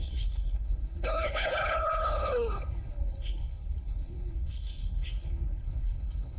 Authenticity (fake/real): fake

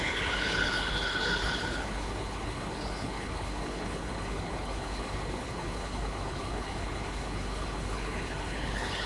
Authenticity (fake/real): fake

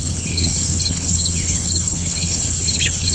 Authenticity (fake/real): fake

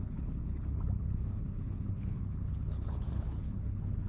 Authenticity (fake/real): fake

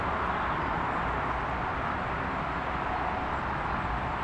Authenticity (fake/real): real